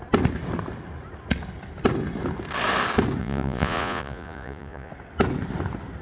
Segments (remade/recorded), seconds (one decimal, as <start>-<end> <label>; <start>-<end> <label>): 0.0-3.2 recorded; 3.2-4.9 remade; 4.9-6.0 recorded